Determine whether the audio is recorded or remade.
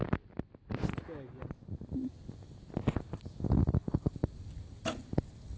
recorded